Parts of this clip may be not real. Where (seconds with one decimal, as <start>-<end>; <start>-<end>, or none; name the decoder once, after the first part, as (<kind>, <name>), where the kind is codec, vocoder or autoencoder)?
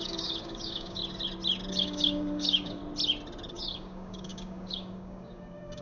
0.0-1.0 (codec, DAC); 1.7-2.8; 3.5-5.8